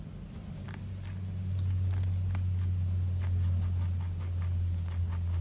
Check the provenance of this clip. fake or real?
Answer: real